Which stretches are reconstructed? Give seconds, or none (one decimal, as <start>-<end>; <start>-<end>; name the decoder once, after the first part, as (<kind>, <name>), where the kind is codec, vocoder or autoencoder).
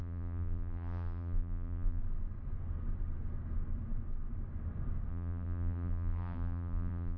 0.0-2.0 (vocoder, BigVGAN v2); 5.1-7.2